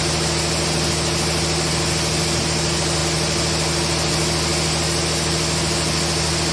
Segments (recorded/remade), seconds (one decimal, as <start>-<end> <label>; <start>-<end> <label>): 0.0-6.5 recorded